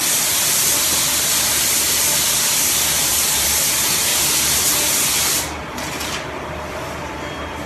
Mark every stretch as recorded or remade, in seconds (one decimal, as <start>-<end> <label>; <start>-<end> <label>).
0.0-4.1 remade; 4.1-5.9 recorded; 5.9-7.7 remade